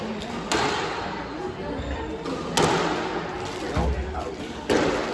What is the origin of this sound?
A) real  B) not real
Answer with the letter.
A